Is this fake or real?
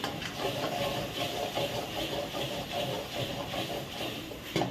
real